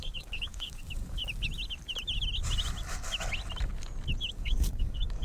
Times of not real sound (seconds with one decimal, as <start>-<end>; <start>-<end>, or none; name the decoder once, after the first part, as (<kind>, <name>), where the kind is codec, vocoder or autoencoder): 0.0-1.2 (codec, DAC); 4.3-5.2